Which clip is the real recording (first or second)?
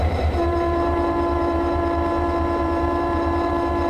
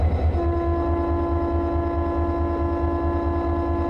second